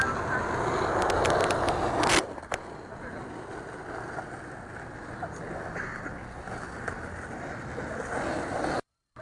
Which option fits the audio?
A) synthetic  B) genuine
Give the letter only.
B